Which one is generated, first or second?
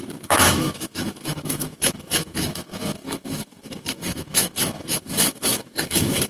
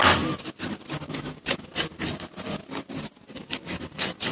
first